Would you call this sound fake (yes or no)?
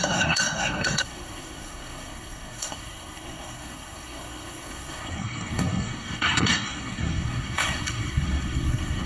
yes